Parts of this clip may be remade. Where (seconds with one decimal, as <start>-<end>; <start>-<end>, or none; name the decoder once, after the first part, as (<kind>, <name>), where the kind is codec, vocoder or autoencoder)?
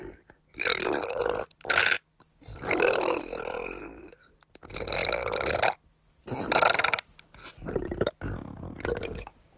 none